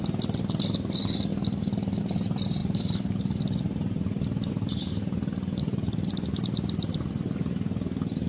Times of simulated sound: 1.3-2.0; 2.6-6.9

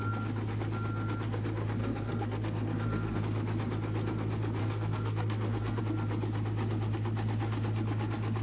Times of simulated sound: 1.8-3.2; 4.6-5.8

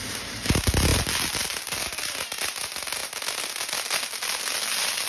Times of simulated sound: none